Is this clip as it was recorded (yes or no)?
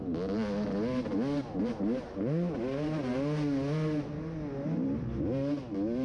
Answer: yes